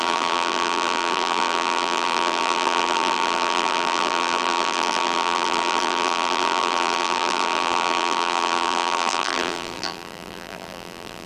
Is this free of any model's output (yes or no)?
no